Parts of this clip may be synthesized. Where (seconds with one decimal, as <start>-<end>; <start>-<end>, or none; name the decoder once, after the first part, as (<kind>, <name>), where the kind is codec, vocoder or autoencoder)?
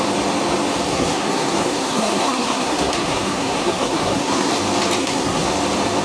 0.9-4.5 (codec, SNAC); 5.0-5.5